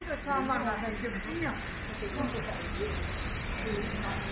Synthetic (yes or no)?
no